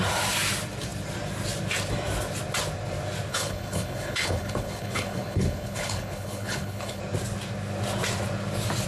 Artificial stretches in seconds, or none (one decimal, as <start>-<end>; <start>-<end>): 3.3-7.0